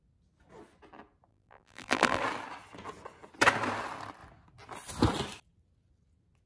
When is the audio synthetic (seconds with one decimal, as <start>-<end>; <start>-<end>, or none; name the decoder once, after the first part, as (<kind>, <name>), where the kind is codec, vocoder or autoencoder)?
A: 1.3-2.2 (vocoder, BigVGAN v2)